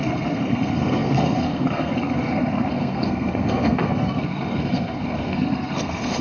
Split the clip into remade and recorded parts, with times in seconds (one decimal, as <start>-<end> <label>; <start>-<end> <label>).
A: 0.0-6.2 remade